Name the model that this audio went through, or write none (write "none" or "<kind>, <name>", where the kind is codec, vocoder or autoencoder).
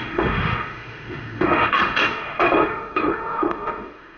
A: autoencoder, DAC-VAE